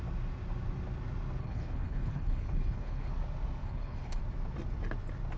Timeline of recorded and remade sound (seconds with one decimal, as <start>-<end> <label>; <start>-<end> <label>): 0.0-1.4 recorded; 1.4-3.1 remade; 3.1-3.6 recorded; 3.6-4.2 remade; 4.2-5.4 recorded